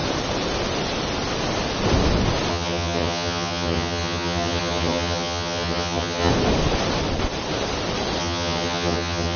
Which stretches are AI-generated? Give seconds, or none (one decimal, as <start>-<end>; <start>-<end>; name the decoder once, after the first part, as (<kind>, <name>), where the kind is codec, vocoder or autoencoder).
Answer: 2.5-6.3 (vocoder, HiFi-GAN); 8.2-9.4